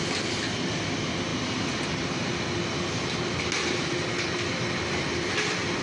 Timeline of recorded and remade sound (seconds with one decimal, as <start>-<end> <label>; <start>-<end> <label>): 0.0-5.8 recorded